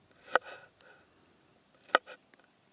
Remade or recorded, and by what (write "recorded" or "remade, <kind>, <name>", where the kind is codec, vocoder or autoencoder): recorded